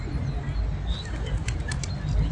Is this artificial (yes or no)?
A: no